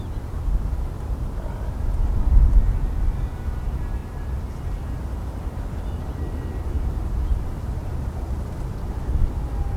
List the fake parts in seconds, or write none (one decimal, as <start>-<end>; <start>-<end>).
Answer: 4.0-4.8; 5.2-9.0